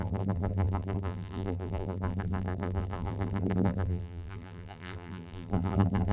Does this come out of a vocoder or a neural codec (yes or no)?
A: yes